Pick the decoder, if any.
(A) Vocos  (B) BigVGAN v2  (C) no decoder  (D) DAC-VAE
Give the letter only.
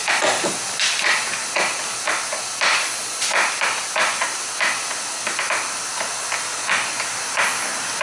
C